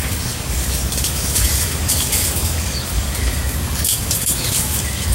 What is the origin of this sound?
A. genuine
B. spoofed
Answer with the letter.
B